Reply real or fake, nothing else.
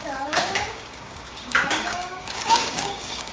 fake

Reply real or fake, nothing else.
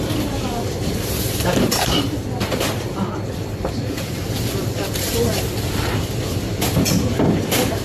fake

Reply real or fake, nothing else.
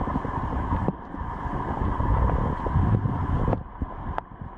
real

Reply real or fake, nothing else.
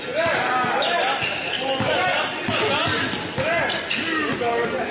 real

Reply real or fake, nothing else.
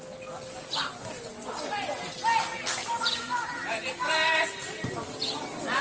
real